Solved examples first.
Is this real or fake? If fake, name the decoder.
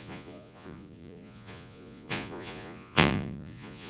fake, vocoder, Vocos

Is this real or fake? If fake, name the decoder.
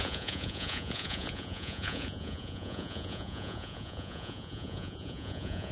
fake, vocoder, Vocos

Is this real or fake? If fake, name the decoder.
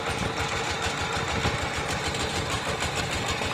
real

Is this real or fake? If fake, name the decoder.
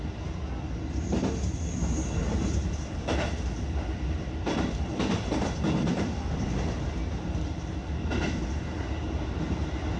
real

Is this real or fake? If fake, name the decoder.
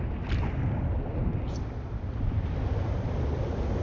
real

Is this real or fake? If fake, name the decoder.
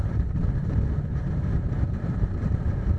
fake, vocoder, BigVGAN v2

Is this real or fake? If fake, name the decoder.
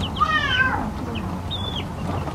real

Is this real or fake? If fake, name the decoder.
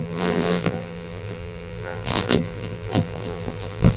fake, vocoder, BigVGAN v2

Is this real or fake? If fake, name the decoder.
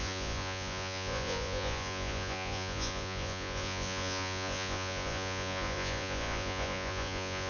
fake, vocoder, Vocos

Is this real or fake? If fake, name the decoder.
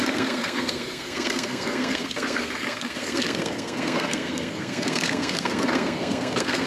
fake, codec, SNAC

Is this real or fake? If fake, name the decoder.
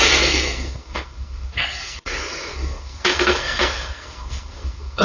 fake, codec, SNAC